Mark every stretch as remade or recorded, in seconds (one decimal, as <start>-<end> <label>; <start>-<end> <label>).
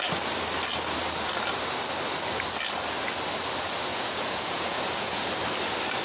0.0-3.9 recorded; 3.9-5.3 remade; 5.3-6.0 recorded